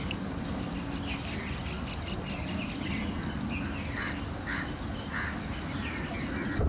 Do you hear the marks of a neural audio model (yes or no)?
no